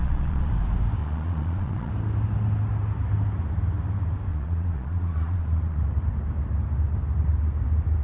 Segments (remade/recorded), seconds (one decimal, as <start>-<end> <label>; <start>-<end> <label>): 0.0-0.5 remade; 0.5-1.0 recorded; 1.0-1.9 remade; 1.9-4.3 recorded; 4.3-5.8 remade; 5.8-8.0 recorded